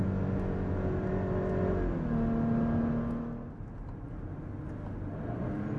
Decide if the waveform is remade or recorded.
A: recorded